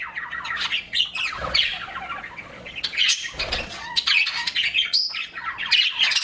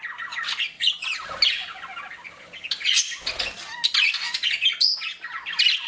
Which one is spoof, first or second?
first